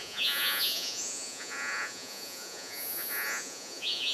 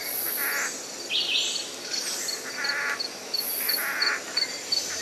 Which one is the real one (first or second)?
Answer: second